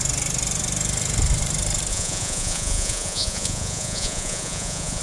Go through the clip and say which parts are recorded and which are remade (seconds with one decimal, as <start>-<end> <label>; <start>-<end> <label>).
0.0-1.9 recorded; 1.9-5.0 remade